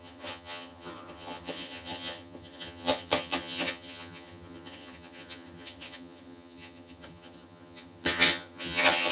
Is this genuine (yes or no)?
no